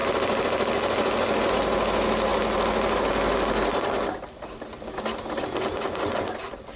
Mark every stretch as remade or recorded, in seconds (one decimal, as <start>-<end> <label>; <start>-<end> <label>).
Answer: 0.0-6.8 recorded